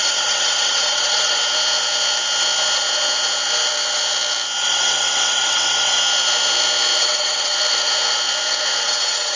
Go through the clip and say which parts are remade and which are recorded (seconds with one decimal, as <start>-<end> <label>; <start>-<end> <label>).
0.0-1.4 remade; 1.4-4.6 recorded; 4.6-6.0 remade; 6.0-7.0 recorded; 7.0-7.5 remade; 7.5-8.8 recorded; 8.8-9.4 remade